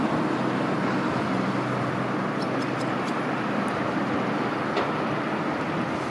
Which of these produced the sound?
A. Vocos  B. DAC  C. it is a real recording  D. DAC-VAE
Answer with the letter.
C